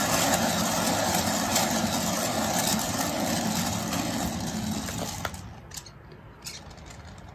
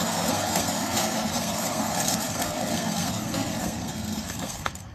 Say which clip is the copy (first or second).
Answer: second